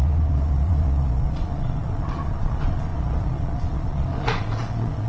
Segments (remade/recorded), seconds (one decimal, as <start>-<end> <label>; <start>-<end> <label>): 0.0-5.1 remade